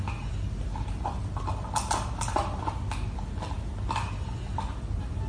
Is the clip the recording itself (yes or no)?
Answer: yes